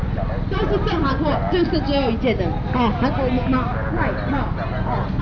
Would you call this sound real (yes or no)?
yes